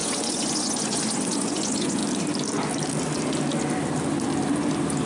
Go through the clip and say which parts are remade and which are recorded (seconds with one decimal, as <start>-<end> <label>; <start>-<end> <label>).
0.0-2.0 remade; 2.0-5.1 recorded